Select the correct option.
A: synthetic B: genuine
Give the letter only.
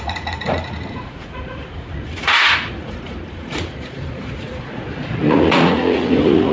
A